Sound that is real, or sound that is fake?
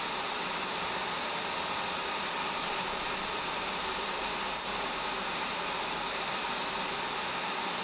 real